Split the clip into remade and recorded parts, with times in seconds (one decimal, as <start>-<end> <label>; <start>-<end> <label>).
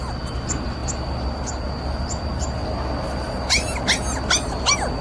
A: 0.0-5.0 recorded